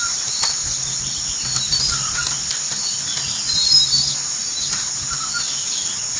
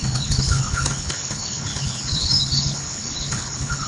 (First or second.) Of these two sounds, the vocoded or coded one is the second